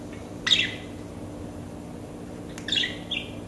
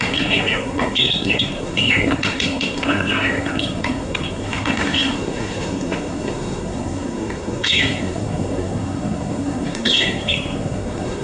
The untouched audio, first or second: first